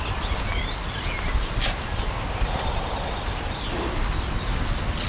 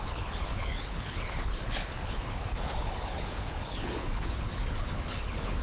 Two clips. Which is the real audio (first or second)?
first